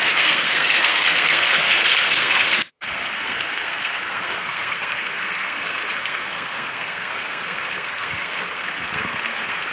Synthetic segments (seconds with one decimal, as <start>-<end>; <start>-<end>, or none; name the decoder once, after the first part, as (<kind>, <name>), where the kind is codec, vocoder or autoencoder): 0.0-9.7 (codec, SNAC)

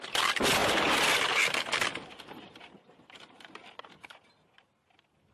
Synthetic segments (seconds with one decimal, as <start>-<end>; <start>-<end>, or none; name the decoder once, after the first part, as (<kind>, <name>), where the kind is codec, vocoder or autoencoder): none

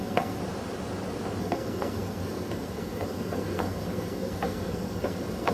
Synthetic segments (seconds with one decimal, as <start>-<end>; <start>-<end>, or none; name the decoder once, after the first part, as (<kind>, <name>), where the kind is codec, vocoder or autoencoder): 0.0-0.4 (codec, SNAC); 1.4-5.5

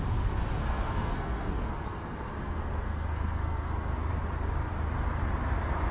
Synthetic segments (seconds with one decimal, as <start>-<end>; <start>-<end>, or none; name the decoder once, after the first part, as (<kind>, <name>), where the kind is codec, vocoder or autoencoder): 0.6-4.1 (codec, SNAC)

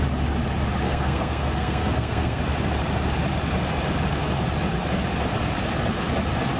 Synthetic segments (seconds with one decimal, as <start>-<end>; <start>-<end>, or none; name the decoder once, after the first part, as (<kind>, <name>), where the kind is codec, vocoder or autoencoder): 0.8-2.4 (codec, SNAC)

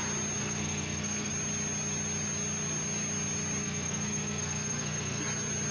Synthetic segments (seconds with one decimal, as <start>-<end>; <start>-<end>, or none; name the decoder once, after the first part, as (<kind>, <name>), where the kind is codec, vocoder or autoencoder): 0.4-1.3 (codec, SNAC); 3.6-5.2